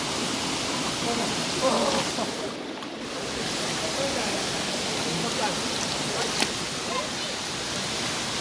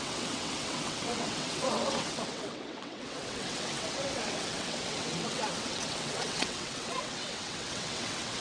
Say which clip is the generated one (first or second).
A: second